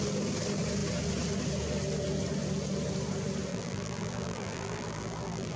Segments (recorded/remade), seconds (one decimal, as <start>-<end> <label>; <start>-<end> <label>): 0.0-3.5 recorded; 3.5-5.6 remade